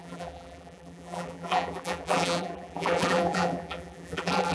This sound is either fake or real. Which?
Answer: fake